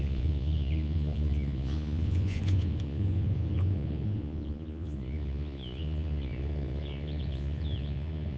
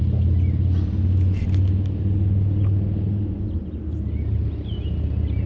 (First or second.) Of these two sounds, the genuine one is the second